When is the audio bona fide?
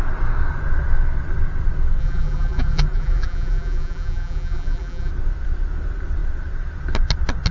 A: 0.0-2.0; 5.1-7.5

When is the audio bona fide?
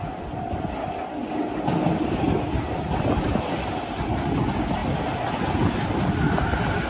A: 0.0-6.9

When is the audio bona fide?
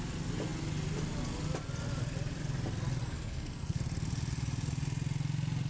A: 0.0-3.0; 3.8-5.7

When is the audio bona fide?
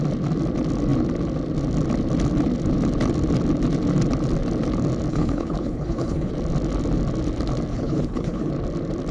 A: 0.0-5.1; 6.3-7.7; 8.5-9.1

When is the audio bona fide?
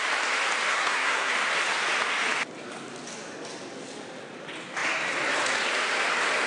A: 0.0-0.7; 1.3-6.5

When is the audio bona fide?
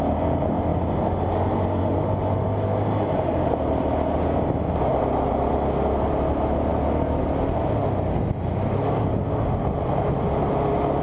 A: 0.0-11.0